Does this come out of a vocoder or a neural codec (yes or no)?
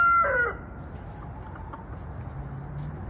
no